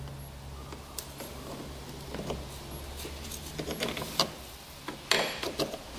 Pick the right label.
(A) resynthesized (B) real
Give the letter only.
B